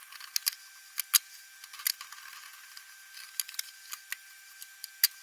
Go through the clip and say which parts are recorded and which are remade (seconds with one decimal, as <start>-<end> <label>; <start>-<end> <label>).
0.0-5.2 recorded

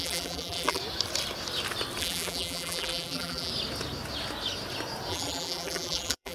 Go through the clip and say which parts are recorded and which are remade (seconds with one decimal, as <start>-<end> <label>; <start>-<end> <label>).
0.0-0.8 remade; 0.8-2.0 recorded; 2.0-3.5 remade; 3.5-5.1 recorded; 5.1-6.3 remade

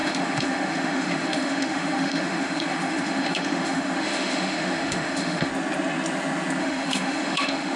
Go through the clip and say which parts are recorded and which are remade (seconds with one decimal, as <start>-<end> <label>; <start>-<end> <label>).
0.0-5.5 remade; 5.5-6.6 recorded; 6.6-7.8 remade